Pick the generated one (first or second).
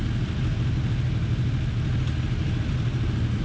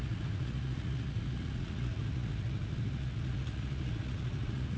second